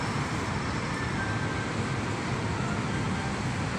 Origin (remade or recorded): recorded